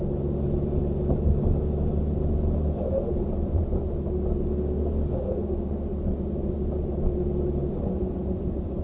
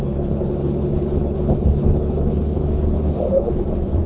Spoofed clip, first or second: second